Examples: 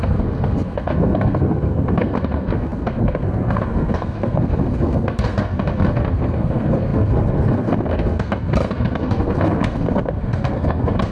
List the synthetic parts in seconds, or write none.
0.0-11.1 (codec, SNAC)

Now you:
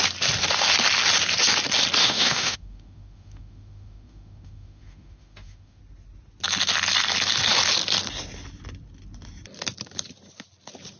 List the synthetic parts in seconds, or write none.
2.0-5.8 (autoencoder, DAC-VAE)

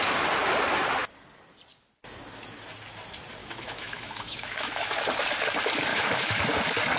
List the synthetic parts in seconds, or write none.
3.4-5.0 (autoencoder, DAC-VAE); 5.9-6.4

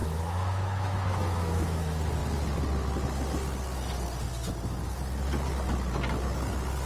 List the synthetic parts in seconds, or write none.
0.0-1.8 (autoencoder, DAC-VAE)

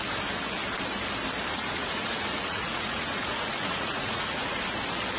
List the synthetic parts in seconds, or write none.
1.5-4.6 (vocoder, Vocos)

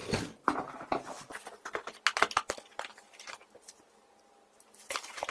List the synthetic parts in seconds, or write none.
none

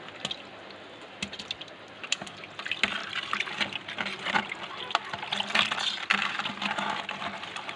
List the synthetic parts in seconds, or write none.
none